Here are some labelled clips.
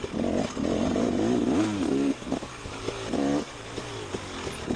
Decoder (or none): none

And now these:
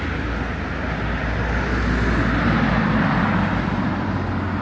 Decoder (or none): none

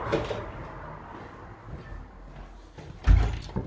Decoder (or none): none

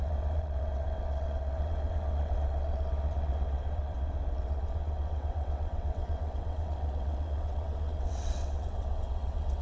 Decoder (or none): vocoder, WaveNeXt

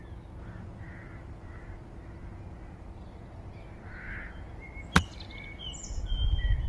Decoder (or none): none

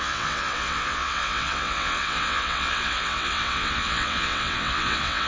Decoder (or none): vocoder, WaveNeXt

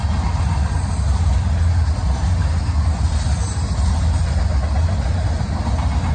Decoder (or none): none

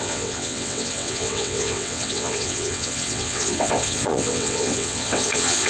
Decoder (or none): vocoder, WaveNeXt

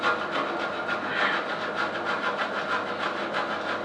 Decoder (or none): none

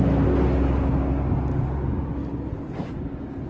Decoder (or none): none